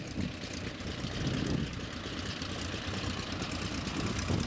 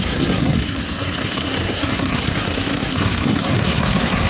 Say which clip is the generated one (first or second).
second